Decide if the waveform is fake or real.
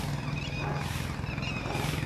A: real